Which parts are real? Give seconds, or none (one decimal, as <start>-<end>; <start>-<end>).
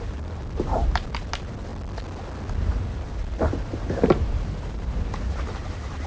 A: 1.7-2.5